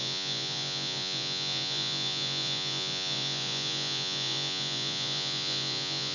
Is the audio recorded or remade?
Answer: remade